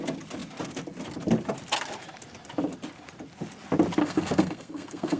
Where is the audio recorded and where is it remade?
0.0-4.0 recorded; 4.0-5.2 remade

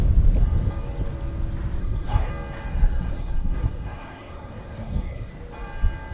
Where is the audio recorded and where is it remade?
0.0-1.8 recorded; 1.8-2.3 remade; 2.3-2.7 recorded; 2.7-5.3 remade; 5.3-6.1 recorded

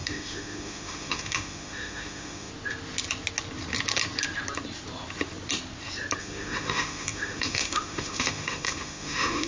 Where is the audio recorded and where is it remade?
0.0-2.5 remade; 2.5-6.2 recorded; 6.2-9.5 remade

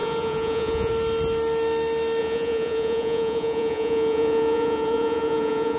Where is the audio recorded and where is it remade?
0.0-0.9 remade; 0.9-2.2 recorded; 2.2-5.8 remade

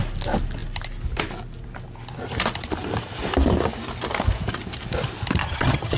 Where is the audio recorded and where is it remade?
0.0-5.4 recorded; 5.4-6.0 remade